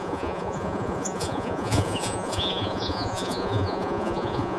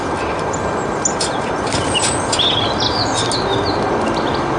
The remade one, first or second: first